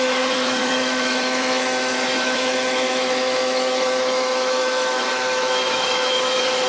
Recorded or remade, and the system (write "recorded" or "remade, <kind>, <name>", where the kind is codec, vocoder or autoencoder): remade, autoencoder, DAC-VAE